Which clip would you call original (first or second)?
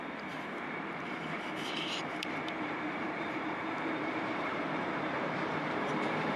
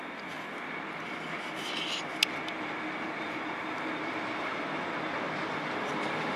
second